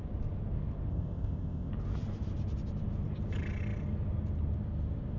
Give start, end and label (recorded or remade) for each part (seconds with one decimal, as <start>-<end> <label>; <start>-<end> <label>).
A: 0.0-0.9 recorded; 0.9-1.7 remade; 1.7-5.2 recorded